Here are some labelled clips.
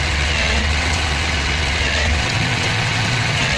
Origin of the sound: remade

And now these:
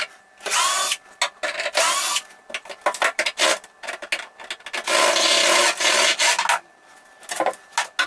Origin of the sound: recorded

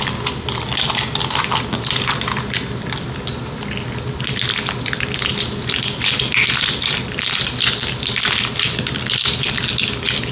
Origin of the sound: recorded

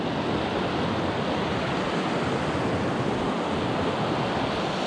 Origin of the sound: recorded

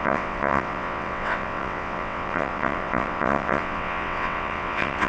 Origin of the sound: remade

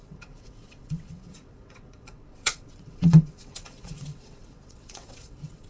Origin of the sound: remade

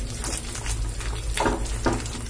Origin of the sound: recorded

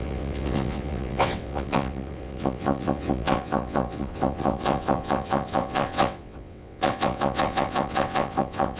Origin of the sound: remade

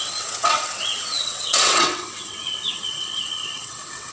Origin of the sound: remade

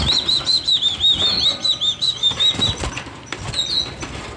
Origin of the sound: recorded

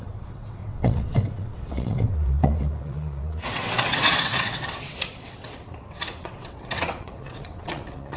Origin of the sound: remade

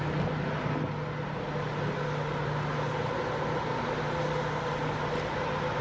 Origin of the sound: recorded